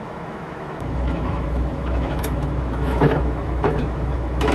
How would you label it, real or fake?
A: fake